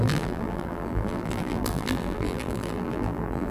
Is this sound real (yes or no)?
no